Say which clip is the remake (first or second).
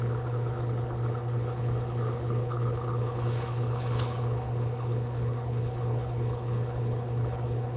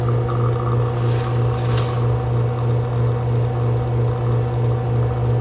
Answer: first